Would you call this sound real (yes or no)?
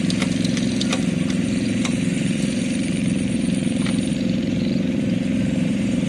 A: no